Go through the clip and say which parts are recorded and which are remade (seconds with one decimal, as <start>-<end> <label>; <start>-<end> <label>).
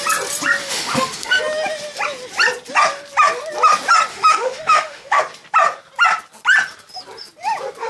0.0-0.6 recorded; 0.6-1.4 remade; 1.4-4.1 recorded; 4.1-5.2 remade; 5.2-7.9 recorded